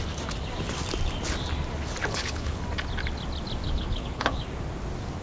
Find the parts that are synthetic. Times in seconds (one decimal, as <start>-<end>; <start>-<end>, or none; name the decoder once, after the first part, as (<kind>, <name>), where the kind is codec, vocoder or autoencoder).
2.0-2.6 (codec, HILCodec); 3.6-4.4